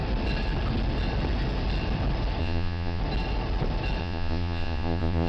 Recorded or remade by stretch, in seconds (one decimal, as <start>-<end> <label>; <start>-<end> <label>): 0.0-2.4 recorded; 2.4-3.0 remade; 3.0-4.0 recorded; 4.0-5.3 remade